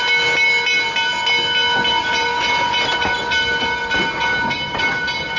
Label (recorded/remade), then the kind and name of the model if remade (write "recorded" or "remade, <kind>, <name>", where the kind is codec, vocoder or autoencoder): recorded